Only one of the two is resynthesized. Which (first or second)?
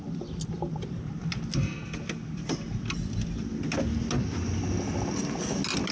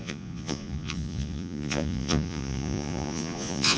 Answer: second